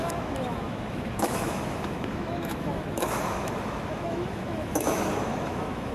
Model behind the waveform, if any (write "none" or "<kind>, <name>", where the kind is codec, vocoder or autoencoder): autoencoder, DAC-VAE